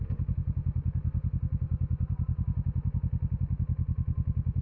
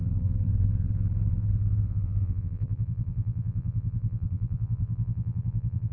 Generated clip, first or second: second